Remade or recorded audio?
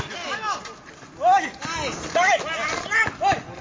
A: recorded